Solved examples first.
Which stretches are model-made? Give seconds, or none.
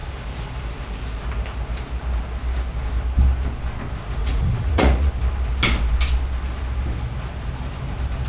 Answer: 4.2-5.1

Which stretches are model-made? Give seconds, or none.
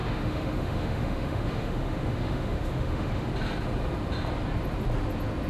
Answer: 0.0-3.3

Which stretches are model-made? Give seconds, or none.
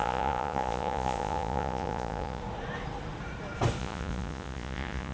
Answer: 0.0-2.4; 3.8-5.1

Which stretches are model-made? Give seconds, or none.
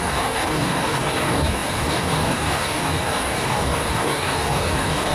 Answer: 0.0-5.1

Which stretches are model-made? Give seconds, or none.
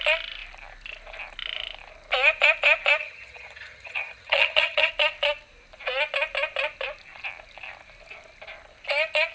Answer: 3.0-4.9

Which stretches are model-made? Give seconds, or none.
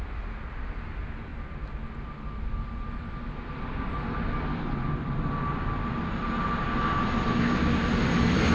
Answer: none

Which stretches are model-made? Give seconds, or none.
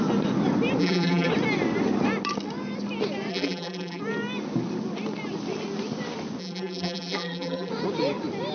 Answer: 0.8-1.3; 3.3-4.0; 6.4-7.7